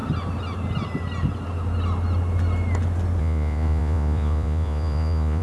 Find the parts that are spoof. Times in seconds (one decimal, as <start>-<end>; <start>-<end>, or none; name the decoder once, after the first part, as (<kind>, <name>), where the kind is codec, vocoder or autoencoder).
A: 3.2-5.4 (vocoder, Vocos)